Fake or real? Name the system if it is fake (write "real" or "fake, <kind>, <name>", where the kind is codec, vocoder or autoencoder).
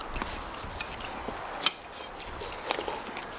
real